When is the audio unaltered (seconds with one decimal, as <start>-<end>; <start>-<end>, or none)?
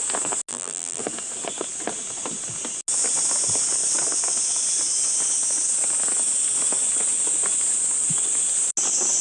0.0-0.5; 1.0-9.2